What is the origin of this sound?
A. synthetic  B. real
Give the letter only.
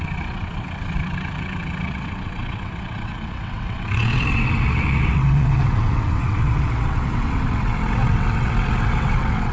A